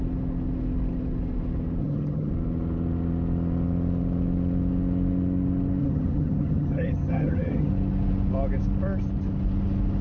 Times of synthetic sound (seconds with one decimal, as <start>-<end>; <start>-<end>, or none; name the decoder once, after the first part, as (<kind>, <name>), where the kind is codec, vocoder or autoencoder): 1.8-2.3 (vocoder, HiFi-GAN); 5.8-7.7